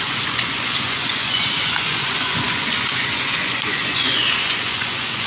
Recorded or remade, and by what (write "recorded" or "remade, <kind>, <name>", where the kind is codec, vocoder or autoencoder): remade, vocoder, Vocos